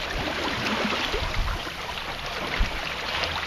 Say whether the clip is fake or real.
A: real